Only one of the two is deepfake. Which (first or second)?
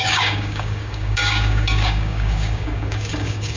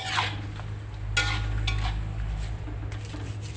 first